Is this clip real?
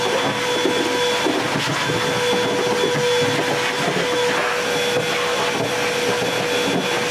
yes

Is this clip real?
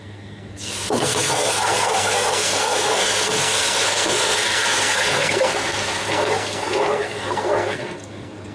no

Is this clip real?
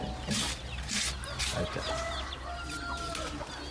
yes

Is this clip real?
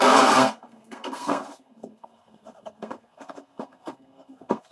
no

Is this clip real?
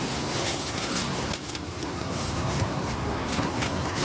no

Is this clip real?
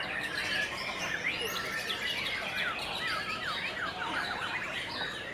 yes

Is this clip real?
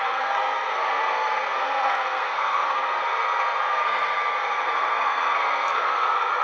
no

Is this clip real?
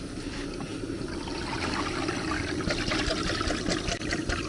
yes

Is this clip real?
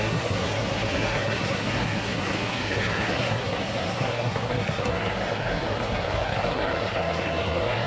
no